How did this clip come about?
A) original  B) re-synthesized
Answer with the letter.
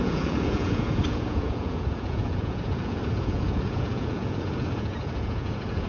B